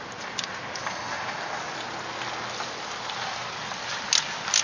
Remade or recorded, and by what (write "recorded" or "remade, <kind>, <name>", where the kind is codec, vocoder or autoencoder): recorded